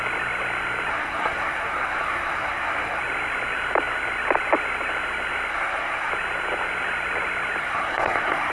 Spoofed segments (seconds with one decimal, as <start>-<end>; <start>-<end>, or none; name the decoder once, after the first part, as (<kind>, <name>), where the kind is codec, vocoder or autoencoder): 0.9-3.0 (codec, SNAC); 5.5-6.1; 7.6-8.5